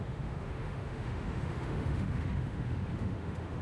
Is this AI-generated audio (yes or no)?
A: yes